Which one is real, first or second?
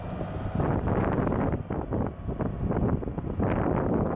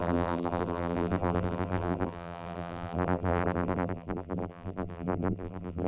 first